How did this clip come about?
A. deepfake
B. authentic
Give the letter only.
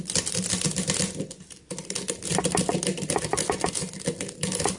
B